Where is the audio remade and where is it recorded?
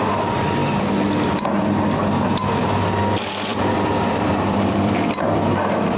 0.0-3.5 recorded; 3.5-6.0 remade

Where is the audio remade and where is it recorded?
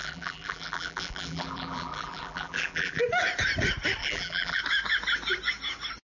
0.0-3.0 remade; 3.0-4.0 recorded; 4.0-4.6 remade; 4.6-6.1 recorded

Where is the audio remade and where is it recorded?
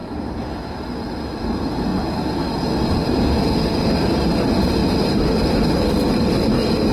0.0-1.9 recorded; 1.9-2.9 remade; 2.9-4.8 recorded; 4.8-5.7 remade; 5.7-6.9 recorded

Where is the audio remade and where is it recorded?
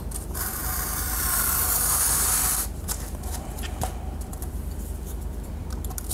0.0-6.1 remade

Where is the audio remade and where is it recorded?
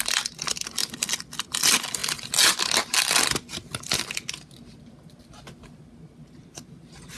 0.0-7.2 recorded